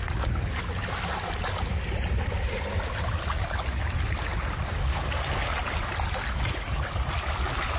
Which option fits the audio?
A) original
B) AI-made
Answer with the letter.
A